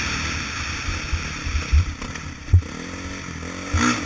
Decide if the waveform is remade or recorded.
recorded